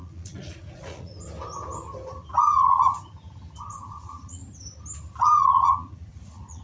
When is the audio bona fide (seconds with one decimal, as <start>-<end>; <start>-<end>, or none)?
1.1-2.3; 2.8-4.0; 4.4-5.2